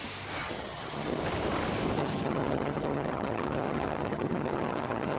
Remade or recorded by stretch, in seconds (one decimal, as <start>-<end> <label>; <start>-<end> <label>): 0.0-0.4 recorded; 0.4-1.2 remade; 1.2-2.0 recorded; 2.0-5.2 remade